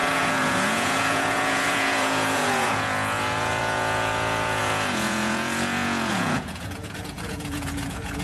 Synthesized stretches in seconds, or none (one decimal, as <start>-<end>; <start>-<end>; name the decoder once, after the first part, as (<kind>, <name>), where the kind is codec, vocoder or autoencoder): 0.0-8.2 (vocoder, Vocos)